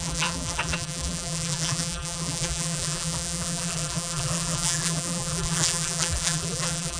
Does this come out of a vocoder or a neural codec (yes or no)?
yes